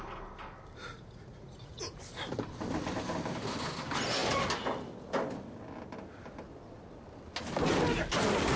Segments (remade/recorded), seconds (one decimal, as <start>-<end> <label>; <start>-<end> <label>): 0.0-0.9 recorded; 0.9-2.0 remade; 2.0-8.6 recorded